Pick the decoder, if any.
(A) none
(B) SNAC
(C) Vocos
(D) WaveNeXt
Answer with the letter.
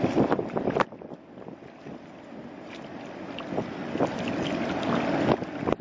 A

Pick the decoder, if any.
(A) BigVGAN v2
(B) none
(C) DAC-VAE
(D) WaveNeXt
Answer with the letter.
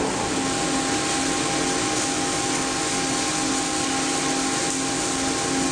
B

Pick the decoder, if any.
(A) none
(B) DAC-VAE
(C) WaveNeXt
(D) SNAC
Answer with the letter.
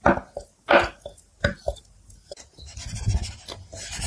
A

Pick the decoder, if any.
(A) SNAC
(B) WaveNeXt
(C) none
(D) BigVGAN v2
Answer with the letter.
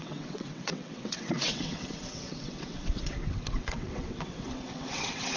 B